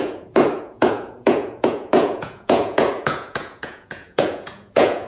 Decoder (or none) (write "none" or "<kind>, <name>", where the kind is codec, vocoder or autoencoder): vocoder, Vocos